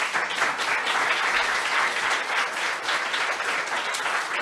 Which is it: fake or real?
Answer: real